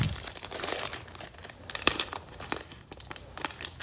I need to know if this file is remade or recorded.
remade